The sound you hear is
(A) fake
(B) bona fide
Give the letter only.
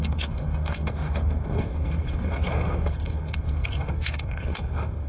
A